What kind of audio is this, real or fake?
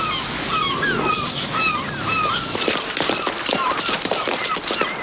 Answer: fake